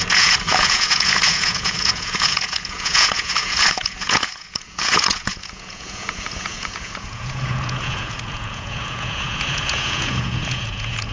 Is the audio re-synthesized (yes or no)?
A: yes